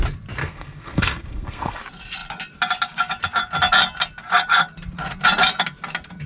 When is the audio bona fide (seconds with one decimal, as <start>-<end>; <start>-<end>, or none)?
0.0-0.4; 1.8-6.3